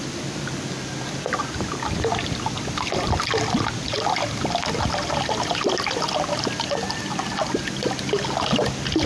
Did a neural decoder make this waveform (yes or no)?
no